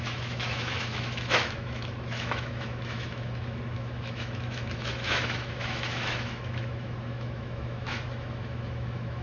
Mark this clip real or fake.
fake